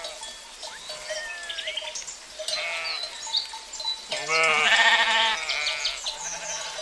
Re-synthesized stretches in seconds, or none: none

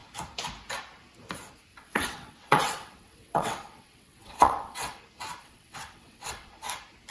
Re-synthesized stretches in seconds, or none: 1.7-5.0; 5.4-6.5

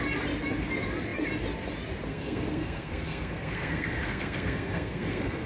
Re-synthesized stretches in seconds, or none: 2.1-5.5